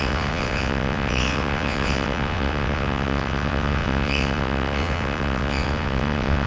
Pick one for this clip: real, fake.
fake